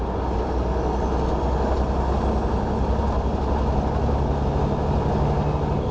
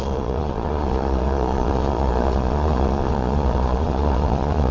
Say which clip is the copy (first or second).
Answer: second